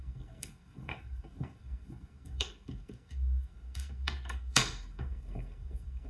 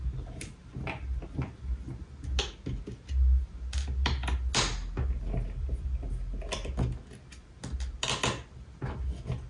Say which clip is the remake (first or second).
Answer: first